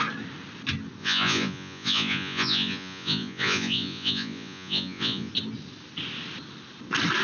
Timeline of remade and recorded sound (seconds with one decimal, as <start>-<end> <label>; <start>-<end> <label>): 0.0-1.0 recorded; 1.0-5.3 remade; 5.3-7.2 recorded